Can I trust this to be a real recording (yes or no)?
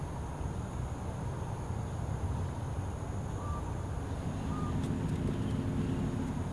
yes